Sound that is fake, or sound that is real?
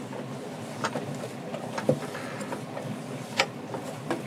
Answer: real